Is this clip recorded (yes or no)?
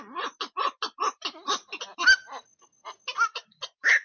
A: yes